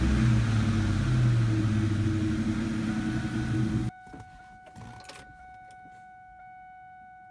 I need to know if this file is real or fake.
real